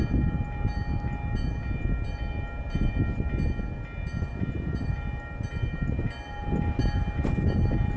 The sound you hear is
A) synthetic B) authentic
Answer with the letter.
B